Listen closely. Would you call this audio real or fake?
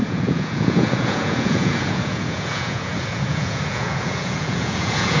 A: fake